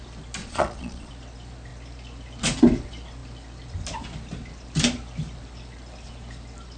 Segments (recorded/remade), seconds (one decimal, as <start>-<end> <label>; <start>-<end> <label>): 0.0-0.4 recorded; 0.4-1.1 remade; 1.1-6.8 recorded